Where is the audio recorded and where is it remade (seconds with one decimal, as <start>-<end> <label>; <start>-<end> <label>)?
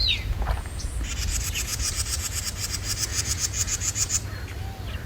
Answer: 0.0-0.9 remade; 0.9-1.7 recorded; 1.7-2.4 remade; 2.4-3.1 recorded; 3.1-4.1 remade; 4.1-5.1 recorded